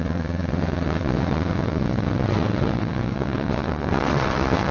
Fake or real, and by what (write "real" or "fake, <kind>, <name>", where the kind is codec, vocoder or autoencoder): fake, vocoder, WaveNeXt